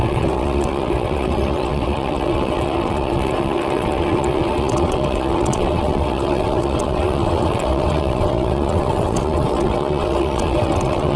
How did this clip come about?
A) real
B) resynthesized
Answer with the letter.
B